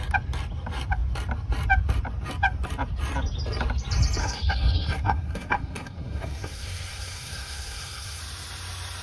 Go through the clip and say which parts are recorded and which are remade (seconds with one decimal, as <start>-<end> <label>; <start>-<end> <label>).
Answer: 0.0-4.2 recorded; 4.2-8.2 remade; 8.2-9.0 recorded